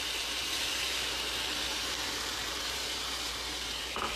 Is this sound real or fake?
fake